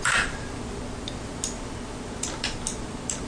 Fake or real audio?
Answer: real